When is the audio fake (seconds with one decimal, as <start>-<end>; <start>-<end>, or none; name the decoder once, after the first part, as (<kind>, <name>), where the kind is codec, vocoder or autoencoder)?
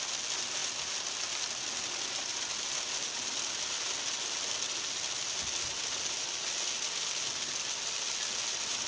none